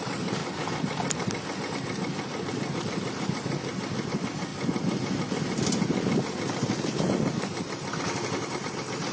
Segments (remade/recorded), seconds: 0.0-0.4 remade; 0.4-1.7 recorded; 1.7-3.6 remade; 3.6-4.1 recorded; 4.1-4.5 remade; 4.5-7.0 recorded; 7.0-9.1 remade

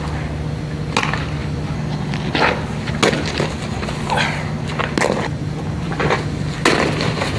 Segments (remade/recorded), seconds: 0.0-7.4 recorded